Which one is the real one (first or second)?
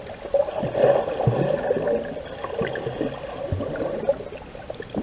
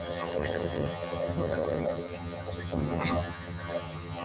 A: first